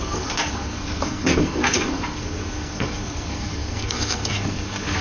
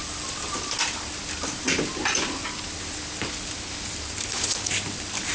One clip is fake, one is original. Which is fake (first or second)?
first